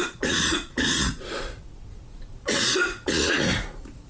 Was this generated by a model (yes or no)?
yes